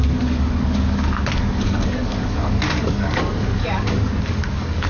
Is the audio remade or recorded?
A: remade